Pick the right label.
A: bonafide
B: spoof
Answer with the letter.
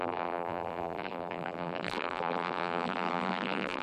B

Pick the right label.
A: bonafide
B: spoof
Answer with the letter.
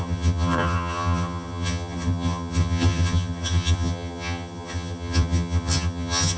B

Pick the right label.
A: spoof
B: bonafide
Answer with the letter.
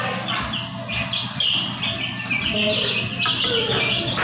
B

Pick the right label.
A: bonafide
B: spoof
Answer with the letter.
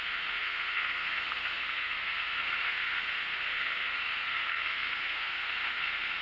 B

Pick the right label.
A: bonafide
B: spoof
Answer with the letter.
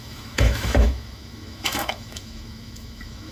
B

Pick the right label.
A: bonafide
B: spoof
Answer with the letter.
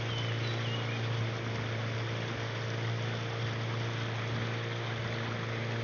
A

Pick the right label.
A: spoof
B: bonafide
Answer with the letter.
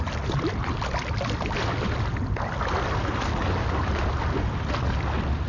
B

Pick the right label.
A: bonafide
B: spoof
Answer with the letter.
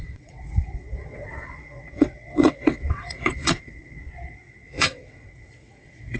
B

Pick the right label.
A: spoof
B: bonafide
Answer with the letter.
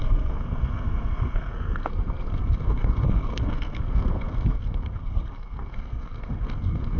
A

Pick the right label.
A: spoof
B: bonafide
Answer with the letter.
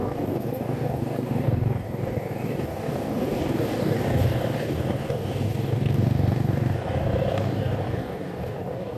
A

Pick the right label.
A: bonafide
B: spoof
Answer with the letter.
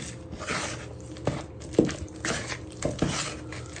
A